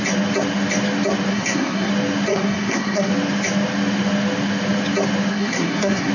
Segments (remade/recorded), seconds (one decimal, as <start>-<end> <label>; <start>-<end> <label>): 0.0-1.3 recorded; 1.3-1.9 remade; 1.9-2.3 recorded; 2.3-3.1 remade; 3.1-5.3 recorded; 5.3-6.1 remade